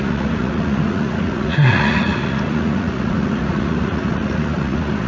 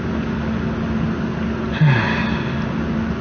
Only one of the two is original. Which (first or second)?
second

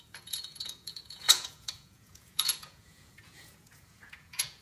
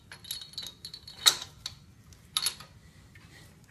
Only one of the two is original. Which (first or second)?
second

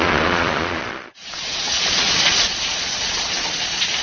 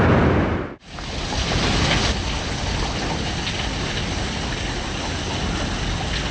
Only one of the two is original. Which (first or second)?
second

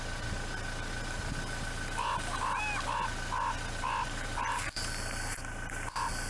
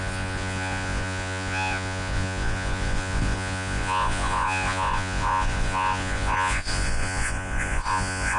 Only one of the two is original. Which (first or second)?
first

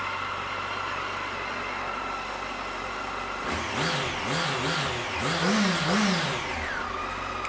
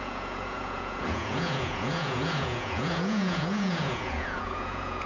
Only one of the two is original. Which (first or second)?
first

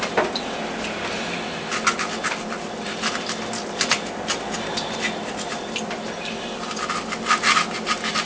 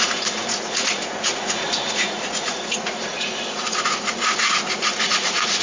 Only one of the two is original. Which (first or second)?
first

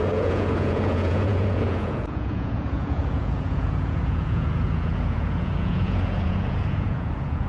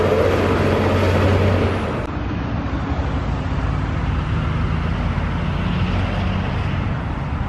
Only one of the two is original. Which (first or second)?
second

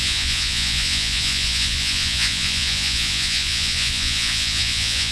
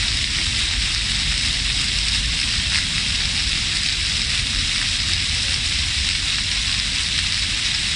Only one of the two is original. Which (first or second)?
second